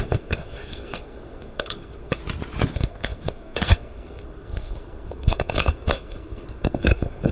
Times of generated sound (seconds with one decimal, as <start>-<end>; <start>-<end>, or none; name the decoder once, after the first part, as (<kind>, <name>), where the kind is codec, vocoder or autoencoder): 0.0-2.2 (codec, SNAC); 2.7-7.3